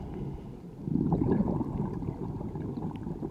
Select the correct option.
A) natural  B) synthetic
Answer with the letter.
A